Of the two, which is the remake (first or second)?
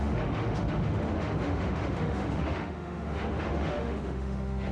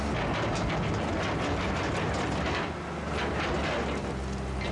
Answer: first